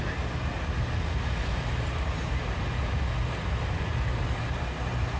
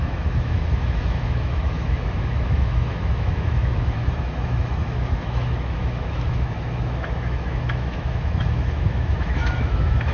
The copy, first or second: second